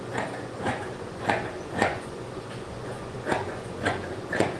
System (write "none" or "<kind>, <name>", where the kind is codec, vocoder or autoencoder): vocoder, Vocos